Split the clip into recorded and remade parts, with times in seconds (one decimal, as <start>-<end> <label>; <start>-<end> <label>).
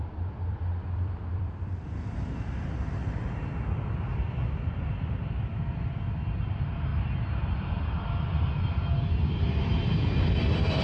0.0-6.9 remade; 6.9-8.0 recorded; 8.0-10.8 remade